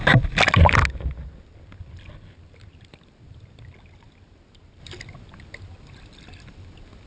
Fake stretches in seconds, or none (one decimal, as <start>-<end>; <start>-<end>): 0.0-0.8; 4.8-7.1